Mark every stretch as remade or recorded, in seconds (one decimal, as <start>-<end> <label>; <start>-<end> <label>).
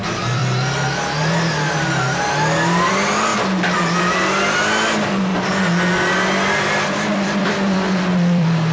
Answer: 0.0-0.4 remade; 0.4-2.9 recorded; 2.9-3.3 remade; 3.3-4.0 recorded; 4.0-5.3 remade; 5.3-6.5 recorded; 6.5-8.7 remade